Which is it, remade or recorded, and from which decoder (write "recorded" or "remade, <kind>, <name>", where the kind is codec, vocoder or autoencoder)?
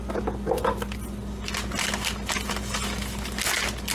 recorded